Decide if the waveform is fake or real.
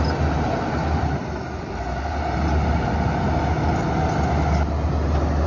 real